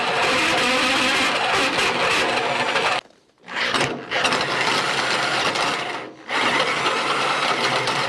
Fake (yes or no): no